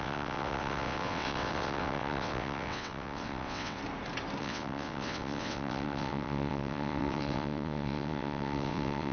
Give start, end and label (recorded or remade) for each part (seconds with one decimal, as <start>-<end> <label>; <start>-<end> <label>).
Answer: 0.0-3.8 remade; 3.8-4.4 recorded; 4.4-9.1 remade